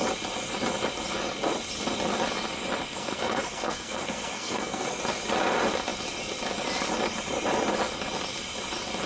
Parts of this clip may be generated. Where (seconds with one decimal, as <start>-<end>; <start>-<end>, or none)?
2.9-5.0